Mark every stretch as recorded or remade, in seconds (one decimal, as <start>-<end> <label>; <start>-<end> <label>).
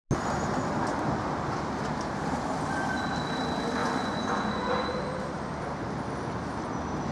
0.0-3.8 recorded; 3.8-4.9 remade; 4.9-7.1 recorded